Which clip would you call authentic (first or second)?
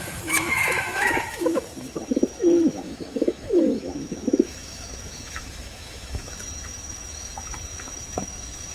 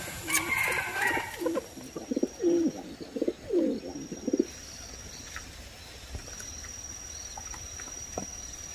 second